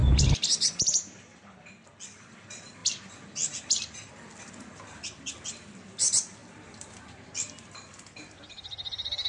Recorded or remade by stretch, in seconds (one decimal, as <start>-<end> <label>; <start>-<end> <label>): 0.0-9.3 remade